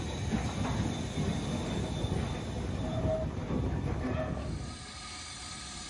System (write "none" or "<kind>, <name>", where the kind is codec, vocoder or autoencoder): none